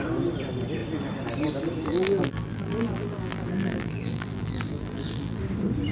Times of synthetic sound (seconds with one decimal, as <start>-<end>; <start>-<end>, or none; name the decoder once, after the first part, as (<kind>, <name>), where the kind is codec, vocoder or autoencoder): 1.9-5.4 (vocoder, BigVGAN v2)